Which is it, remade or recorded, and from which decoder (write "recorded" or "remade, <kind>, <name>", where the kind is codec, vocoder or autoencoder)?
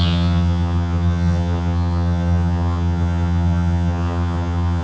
remade, vocoder, HiFi-GAN